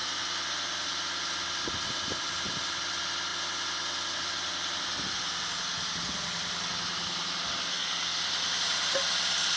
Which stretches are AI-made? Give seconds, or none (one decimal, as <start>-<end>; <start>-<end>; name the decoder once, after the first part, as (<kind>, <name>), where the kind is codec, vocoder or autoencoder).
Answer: 7.7-8.2 (codec, SNAC)